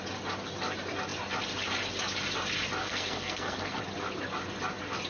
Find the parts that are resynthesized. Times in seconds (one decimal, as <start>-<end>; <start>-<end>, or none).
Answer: 2.8-3.8